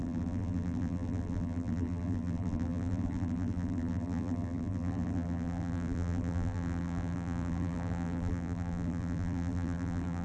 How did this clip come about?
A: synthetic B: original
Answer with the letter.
A